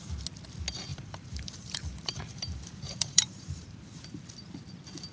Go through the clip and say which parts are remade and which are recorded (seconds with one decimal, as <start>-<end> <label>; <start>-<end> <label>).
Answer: 0.0-0.9 recorded; 0.9-4.0 remade; 4.0-5.1 recorded